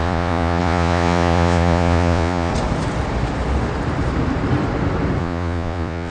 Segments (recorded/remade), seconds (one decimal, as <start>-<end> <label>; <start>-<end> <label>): 0.0-2.5 remade; 2.5-5.2 recorded; 5.2-6.1 remade